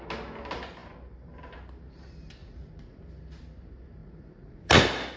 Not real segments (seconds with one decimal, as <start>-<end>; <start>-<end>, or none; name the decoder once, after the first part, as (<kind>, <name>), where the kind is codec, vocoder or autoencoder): 2.4-3.0 (vocoder, Vocos); 4.0-4.8